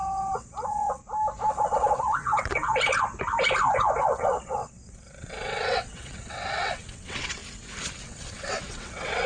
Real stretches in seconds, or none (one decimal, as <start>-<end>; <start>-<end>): 1.0-1.5; 2.7-4.0; 7.4-8.0